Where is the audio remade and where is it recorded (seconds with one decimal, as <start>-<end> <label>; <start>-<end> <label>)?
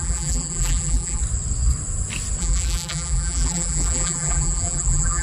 0.0-1.2 remade; 1.2-2.4 recorded; 2.4-5.2 remade